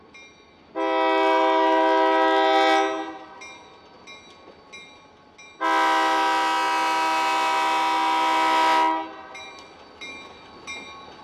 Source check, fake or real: real